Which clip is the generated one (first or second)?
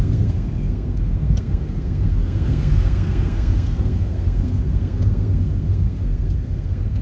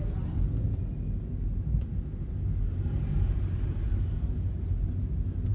first